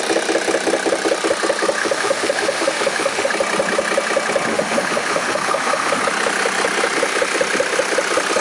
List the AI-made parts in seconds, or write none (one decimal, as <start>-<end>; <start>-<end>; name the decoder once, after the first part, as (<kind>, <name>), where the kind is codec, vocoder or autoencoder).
1.8-3.3 (autoencoder, DAC-VAE); 4.5-6.0